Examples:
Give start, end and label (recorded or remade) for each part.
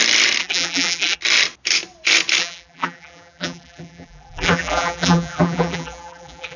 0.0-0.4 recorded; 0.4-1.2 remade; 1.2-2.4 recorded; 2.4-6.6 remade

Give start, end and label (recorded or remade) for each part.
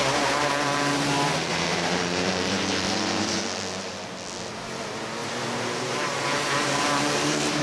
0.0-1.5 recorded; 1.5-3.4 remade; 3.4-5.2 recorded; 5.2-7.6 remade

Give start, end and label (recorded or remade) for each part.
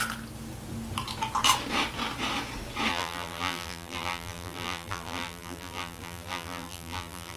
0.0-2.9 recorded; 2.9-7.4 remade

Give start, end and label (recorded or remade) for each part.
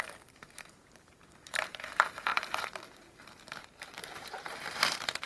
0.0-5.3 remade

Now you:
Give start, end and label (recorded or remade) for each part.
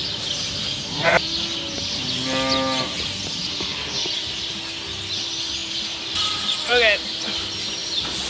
0.0-5.6 recorded; 5.6-6.7 remade; 6.7-7.8 recorded; 7.8-8.3 remade